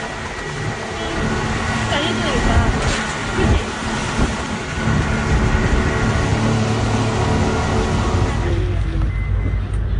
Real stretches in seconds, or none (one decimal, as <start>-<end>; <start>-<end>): 0.0-10.0